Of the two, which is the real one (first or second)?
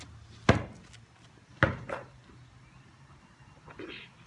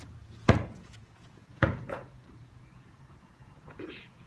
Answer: first